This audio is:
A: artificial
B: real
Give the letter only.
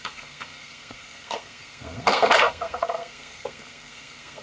A